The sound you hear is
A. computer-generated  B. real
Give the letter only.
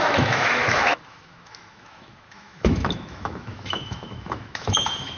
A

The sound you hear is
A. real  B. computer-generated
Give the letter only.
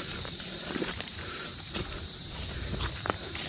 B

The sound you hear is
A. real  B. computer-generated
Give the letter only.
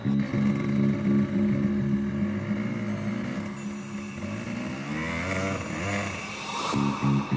A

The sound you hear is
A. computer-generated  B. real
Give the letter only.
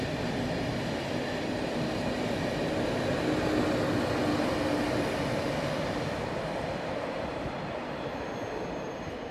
B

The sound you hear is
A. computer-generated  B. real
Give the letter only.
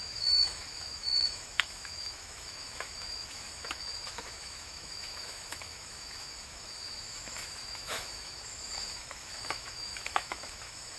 A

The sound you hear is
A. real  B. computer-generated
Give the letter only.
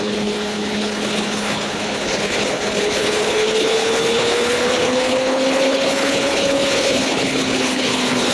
B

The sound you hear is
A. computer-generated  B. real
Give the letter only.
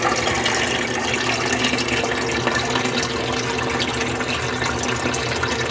B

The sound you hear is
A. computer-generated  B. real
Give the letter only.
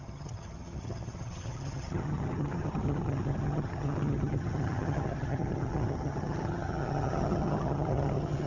A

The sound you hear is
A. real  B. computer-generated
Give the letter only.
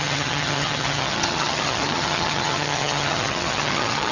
B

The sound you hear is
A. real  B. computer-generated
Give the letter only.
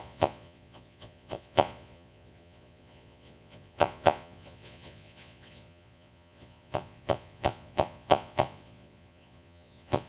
B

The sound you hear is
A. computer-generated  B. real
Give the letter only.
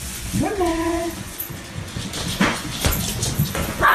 A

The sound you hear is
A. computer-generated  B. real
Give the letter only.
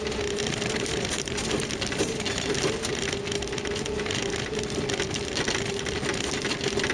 B